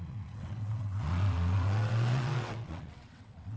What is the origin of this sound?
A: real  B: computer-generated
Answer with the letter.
B